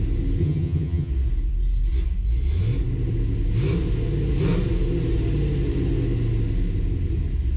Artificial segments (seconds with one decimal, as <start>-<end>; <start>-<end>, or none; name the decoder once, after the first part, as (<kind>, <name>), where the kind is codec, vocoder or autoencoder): 0.4-1.1 (vocoder, HiFi-GAN)